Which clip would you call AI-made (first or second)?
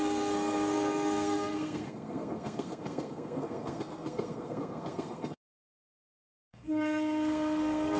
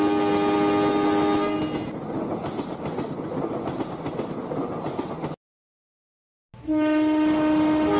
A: first